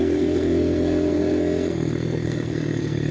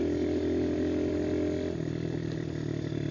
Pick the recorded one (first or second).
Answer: second